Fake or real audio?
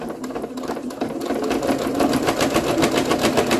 real